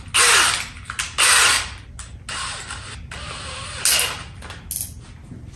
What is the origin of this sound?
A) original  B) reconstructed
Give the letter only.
A